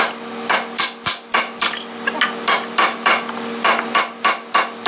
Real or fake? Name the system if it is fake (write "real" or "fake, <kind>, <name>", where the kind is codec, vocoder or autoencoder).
real